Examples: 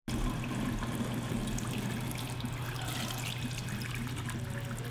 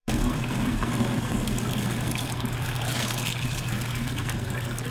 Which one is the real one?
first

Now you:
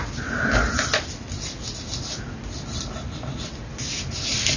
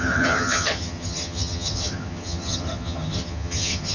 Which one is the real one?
first